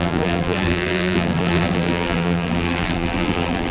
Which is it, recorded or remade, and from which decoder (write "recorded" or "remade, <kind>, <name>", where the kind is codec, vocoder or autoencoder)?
remade, vocoder, BigVGAN v2